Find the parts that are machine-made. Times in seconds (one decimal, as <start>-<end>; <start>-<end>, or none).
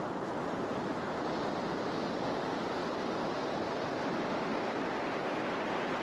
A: none